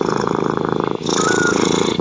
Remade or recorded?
recorded